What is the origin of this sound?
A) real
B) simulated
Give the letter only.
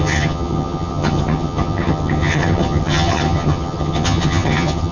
B